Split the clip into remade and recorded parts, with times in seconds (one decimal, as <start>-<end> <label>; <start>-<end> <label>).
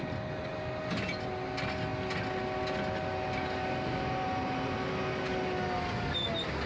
0.0-6.7 recorded